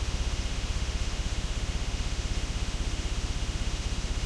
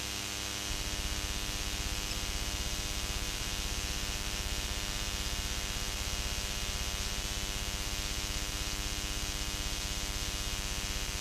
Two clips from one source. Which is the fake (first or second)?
first